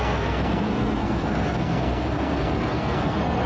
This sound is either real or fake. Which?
fake